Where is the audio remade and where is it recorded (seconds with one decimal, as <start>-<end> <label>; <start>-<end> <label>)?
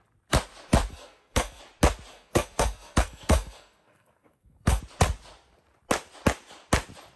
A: 0.0-0.9 recorded; 0.9-1.6 remade; 1.6-2.1 recorded; 2.1-4.8 remade; 4.8-7.2 recorded